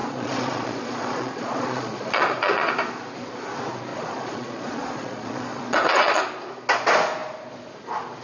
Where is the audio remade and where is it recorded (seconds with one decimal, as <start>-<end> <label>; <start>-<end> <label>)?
0.0-2.7 remade; 2.7-3.9 recorded; 3.9-6.2 remade; 6.2-8.2 recorded